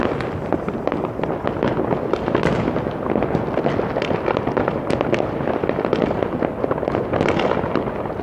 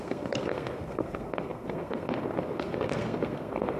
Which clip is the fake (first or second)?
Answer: second